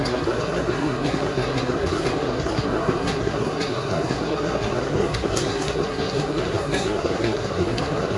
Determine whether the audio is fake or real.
fake